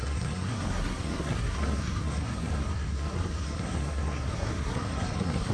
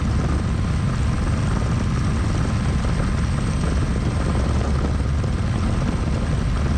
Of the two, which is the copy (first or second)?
first